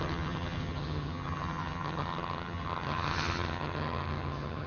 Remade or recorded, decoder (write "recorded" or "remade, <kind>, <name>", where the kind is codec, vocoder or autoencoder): remade, vocoder, HiFi-GAN